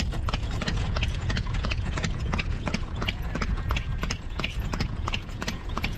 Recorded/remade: remade